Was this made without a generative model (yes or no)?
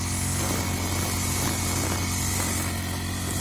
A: yes